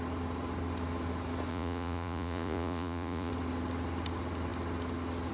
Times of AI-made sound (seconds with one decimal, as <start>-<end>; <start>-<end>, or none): 1.5-3.3